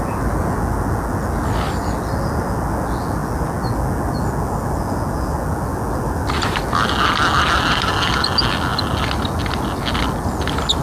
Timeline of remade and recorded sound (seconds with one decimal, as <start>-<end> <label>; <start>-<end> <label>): 0.0-10.8 recorded